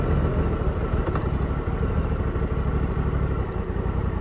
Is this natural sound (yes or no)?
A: yes